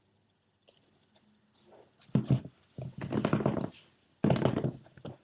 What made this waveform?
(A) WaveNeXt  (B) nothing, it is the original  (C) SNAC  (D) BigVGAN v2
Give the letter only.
B